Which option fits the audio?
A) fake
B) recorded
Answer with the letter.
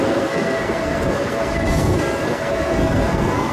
A